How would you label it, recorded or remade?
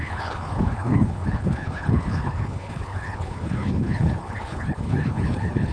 remade